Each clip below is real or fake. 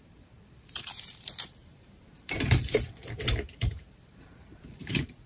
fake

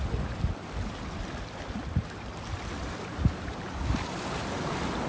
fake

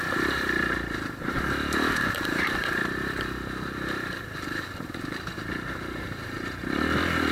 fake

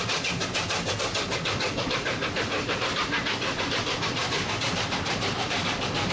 real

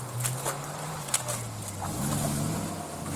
real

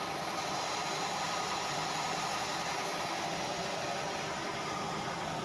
real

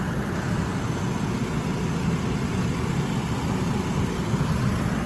real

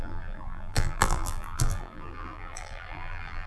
fake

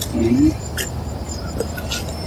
real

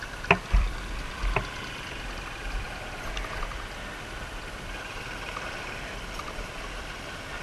fake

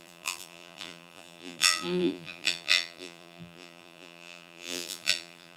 fake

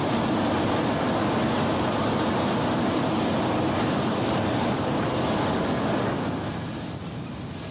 real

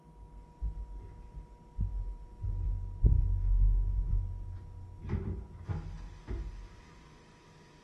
real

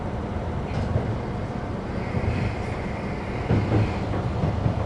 fake